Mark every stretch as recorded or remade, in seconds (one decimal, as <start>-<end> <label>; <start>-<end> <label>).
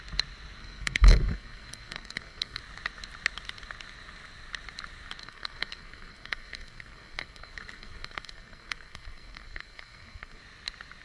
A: 0.0-0.6 recorded; 0.6-2.6 remade; 2.6-5.2 recorded; 5.2-10.4 remade; 10.4-11.0 recorded